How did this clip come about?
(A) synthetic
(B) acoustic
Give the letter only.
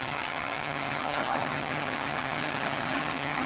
A